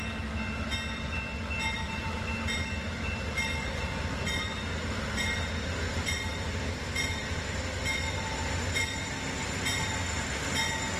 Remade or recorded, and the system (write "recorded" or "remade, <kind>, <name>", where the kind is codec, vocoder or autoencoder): recorded